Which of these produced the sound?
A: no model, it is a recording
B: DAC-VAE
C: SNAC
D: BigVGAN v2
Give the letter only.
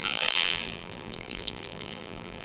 D